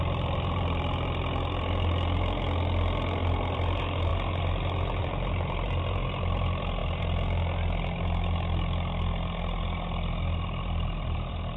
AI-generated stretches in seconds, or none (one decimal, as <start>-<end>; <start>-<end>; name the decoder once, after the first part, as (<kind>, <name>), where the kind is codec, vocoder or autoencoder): 0.0-4.1 (vocoder, BigVGAN v2); 5.0-6.8; 10.6-11.6